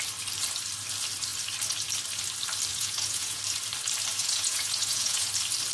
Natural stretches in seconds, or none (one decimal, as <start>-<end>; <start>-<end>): 0.0-2.7; 3.4-4.2; 5.3-5.7